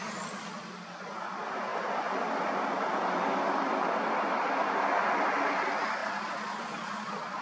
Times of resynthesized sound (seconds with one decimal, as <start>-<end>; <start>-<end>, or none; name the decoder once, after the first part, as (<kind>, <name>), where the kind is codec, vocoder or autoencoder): none